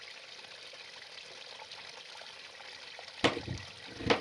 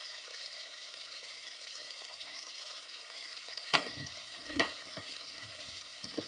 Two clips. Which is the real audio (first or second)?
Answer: first